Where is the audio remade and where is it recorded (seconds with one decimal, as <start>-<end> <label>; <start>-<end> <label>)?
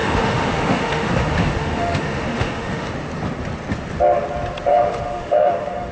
0.0-2.9 remade; 2.9-4.7 recorded; 4.7-5.9 remade